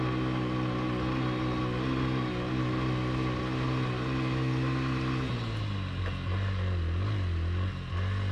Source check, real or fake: real